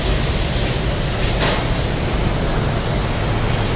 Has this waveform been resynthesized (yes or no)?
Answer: no